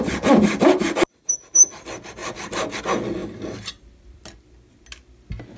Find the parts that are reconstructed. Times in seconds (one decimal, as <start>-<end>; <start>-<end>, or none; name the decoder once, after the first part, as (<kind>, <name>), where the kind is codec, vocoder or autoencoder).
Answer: 3.2-3.8 (vocoder, BigVGAN v2)